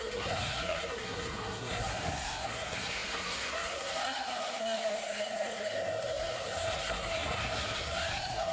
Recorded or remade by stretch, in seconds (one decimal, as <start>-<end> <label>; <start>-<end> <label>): 0.0-8.5 remade